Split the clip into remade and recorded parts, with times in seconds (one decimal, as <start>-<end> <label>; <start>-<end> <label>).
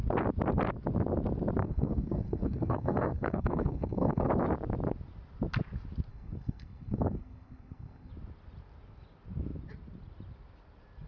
0.0-1.6 recorded; 1.6-4.3 remade; 4.3-6.1 recorded; 6.1-8.1 remade; 8.1-11.1 recorded